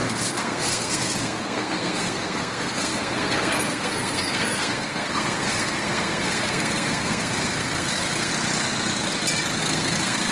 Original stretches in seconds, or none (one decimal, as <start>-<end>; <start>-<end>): 8.3-9.6